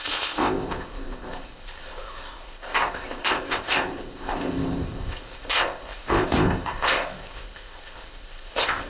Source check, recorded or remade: remade